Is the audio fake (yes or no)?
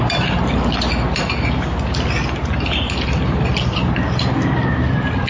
no